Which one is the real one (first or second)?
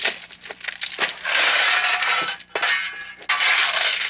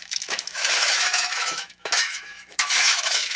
first